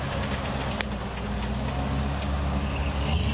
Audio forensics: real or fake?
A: real